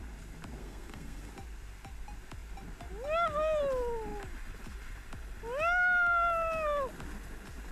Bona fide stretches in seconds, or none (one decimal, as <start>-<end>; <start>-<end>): 0.0-0.6; 1.3-7.7